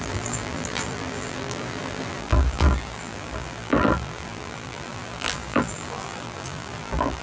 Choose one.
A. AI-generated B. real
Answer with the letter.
A